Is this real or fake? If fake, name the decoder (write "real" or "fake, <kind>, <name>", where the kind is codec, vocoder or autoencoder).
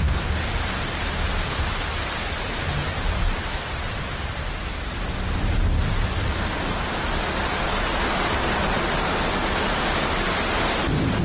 real